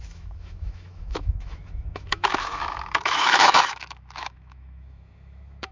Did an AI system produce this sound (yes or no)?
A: yes